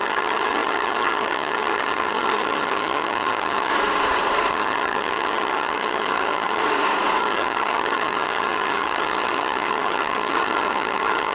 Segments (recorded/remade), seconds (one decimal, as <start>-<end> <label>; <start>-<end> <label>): 0.0-3.7 remade; 3.7-4.5 recorded; 4.5-6.6 remade; 6.6-7.2 recorded; 7.2-11.3 remade